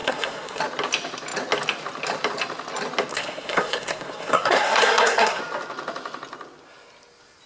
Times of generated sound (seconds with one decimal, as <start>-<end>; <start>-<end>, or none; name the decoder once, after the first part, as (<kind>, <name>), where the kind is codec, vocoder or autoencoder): 0.0-0.6 (codec, SNAC); 3.1-5.4